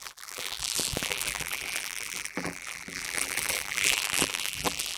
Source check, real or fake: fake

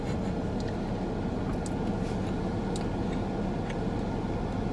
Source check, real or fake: real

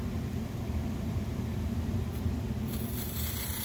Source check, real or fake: fake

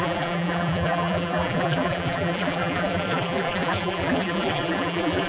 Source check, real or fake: fake